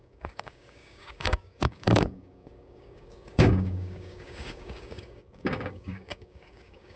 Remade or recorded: remade